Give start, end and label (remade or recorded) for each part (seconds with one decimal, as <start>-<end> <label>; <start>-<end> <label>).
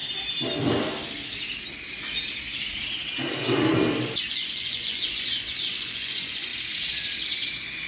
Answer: 0.0-4.3 recorded; 4.3-6.5 remade; 6.5-7.9 recorded